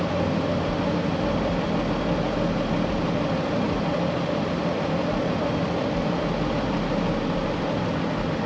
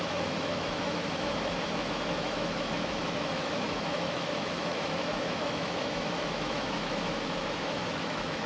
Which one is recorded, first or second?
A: first